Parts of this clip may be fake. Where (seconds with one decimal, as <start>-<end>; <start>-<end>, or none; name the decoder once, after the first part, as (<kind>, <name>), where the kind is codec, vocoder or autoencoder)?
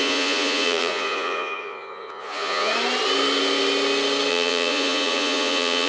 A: 0.0-2.7 (vocoder, Vocos); 4.3-5.9